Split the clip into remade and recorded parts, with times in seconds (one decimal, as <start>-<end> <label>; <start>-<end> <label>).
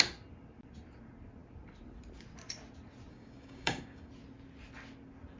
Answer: 0.0-3.1 recorded; 3.1-4.1 remade; 4.1-5.4 recorded